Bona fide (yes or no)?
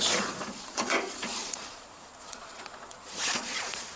no